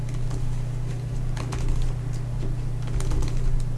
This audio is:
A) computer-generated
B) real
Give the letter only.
B